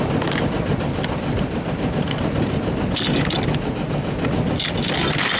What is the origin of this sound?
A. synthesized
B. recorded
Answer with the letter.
B